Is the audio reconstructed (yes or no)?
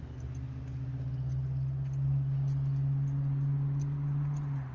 no